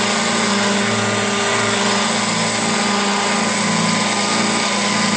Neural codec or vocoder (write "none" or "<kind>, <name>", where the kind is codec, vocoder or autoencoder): none